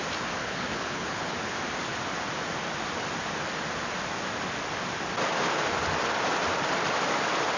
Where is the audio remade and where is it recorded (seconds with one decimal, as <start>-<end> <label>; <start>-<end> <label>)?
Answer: 0.0-0.4 recorded; 0.4-1.3 remade; 1.3-7.6 recorded